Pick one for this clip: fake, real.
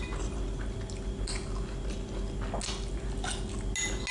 real